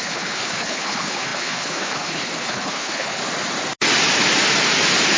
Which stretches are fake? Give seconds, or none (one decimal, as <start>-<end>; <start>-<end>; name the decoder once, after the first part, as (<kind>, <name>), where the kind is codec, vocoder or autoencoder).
0.0-3.2 (codec, HILCodec)